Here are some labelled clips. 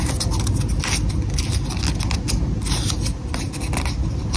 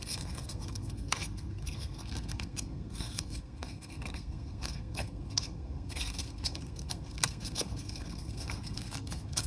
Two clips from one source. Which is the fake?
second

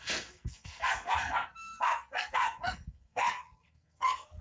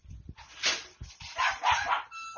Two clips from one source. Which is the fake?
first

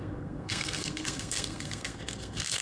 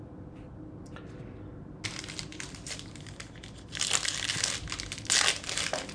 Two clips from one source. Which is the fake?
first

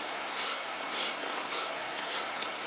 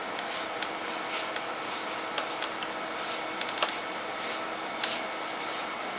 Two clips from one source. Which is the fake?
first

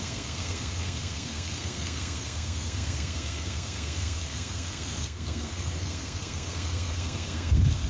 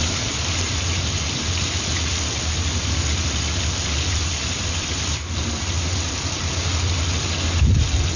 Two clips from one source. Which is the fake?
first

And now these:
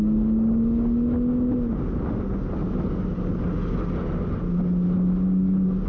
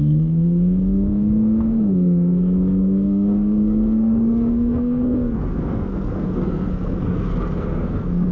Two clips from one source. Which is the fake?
second